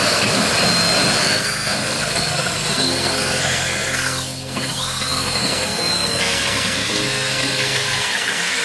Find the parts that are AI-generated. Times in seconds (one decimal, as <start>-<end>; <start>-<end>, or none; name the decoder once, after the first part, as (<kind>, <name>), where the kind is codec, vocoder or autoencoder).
0.0-0.5 (codec, SNAC); 1.2-8.6